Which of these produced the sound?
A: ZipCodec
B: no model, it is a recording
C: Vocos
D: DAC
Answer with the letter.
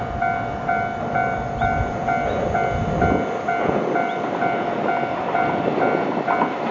B